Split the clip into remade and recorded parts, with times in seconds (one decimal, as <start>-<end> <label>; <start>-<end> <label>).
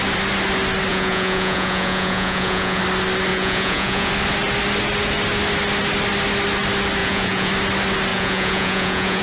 0.0-0.9 recorded; 0.9-2.8 remade; 2.8-3.3 recorded; 3.3-4.1 remade; 4.1-7.0 recorded; 7.0-7.5 remade; 7.5-8.1 recorded; 8.1-9.2 remade